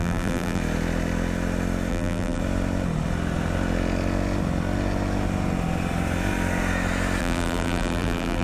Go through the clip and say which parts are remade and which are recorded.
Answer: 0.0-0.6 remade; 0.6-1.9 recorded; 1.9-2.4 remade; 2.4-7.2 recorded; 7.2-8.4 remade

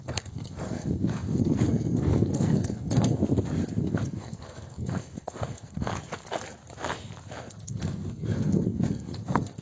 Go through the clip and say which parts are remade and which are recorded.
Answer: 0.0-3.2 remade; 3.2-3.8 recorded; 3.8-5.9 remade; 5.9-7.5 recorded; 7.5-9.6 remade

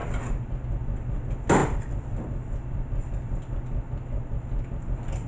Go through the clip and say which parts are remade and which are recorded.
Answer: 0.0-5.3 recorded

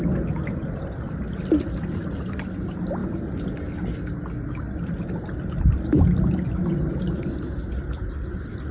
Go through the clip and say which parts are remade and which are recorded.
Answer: 0.0-8.7 recorded